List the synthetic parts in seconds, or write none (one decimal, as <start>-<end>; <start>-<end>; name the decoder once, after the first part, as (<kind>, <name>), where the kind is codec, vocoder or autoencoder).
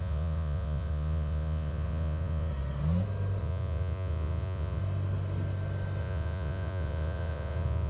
0.0-2.5 (vocoder, Vocos); 3.4-4.8; 6.0-7.9